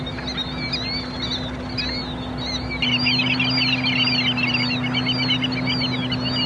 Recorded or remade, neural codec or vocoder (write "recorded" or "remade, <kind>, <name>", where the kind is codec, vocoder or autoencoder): recorded